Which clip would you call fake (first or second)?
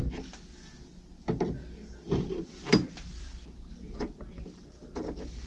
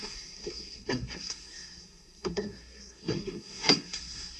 second